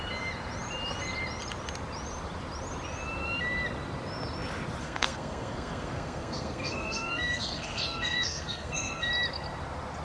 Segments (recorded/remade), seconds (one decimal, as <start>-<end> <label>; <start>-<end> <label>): 0.0-4.8 recorded; 4.8-9.1 remade; 9.1-10.0 recorded